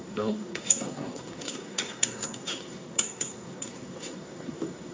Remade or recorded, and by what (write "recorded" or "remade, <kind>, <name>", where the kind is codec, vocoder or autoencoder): remade, codec, SNAC